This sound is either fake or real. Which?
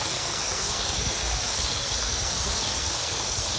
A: fake